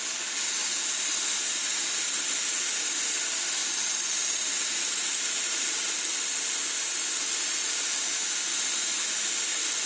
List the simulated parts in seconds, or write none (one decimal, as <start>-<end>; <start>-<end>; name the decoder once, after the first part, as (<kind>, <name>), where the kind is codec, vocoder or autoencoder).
none